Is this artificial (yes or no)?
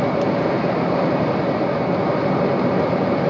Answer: no